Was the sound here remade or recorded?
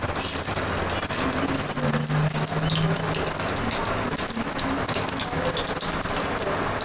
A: recorded